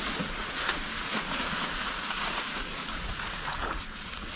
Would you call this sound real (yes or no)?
no